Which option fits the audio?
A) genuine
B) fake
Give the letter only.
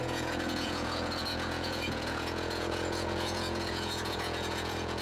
B